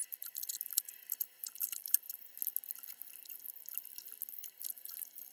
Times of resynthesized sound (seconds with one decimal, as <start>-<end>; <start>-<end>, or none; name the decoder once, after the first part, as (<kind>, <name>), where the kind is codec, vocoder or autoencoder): 0.0-2.3 (vocoder, BigVGAN v2); 4.7-5.3